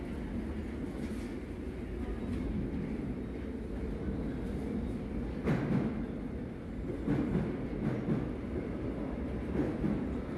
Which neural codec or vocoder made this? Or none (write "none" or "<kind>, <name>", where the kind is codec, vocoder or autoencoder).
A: none